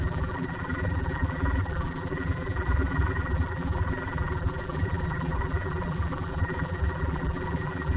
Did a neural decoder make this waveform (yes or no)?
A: yes